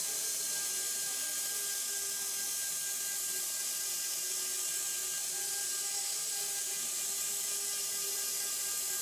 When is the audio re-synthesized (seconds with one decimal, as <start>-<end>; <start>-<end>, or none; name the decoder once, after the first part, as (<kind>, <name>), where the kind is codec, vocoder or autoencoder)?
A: none